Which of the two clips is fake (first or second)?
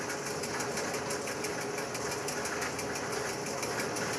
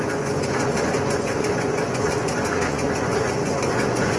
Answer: second